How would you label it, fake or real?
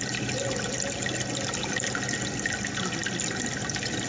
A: real